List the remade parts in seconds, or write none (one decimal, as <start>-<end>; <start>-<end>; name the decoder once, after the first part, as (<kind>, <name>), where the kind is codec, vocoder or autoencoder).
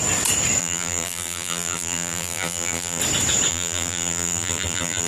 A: 0.6-3.0 (vocoder, BigVGAN v2); 3.5-5.1